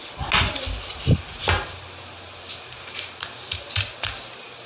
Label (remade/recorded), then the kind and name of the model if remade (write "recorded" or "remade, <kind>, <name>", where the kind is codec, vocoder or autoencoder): recorded